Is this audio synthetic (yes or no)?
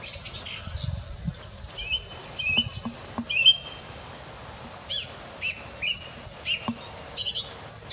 no